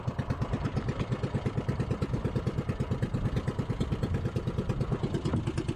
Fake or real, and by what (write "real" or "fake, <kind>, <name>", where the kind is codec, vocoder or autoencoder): real